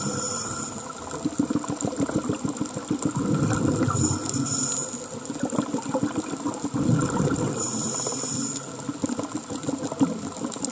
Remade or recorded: recorded